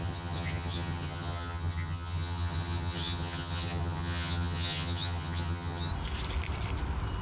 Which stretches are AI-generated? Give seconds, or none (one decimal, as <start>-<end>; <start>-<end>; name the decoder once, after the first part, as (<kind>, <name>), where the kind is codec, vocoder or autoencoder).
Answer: 0.0-5.9 (vocoder, HiFi-GAN)